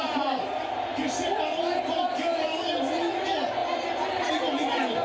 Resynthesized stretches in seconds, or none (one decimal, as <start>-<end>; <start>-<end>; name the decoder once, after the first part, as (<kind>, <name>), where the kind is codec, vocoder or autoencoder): none